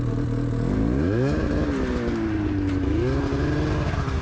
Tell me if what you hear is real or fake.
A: real